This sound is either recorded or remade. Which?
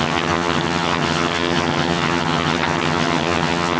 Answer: remade